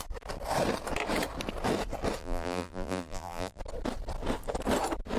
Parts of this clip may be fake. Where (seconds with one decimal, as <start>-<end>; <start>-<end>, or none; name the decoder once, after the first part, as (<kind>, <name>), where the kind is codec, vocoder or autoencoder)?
2.2-3.6 (vocoder, BigVGAN v2)